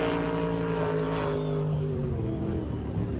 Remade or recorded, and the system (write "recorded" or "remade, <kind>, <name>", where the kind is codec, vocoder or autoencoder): recorded